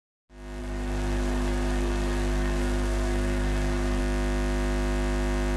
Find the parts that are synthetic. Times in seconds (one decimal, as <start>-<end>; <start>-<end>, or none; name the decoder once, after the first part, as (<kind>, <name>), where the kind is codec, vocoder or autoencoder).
0.6-4.0 (codec, SNAC)